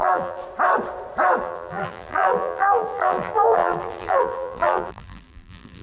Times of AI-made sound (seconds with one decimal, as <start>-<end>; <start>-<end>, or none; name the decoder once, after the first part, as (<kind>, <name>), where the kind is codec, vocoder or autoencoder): 0.0-0.4 (vocoder, BigVGAN v2); 1.4-5.8